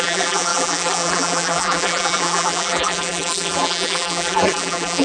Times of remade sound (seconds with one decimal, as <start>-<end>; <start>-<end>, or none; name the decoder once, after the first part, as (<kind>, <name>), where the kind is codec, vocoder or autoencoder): 0.0-5.0 (vocoder, BigVGAN v2)